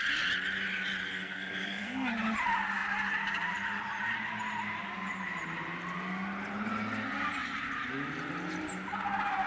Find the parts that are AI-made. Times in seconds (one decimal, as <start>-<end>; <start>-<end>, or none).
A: 1.1-2.1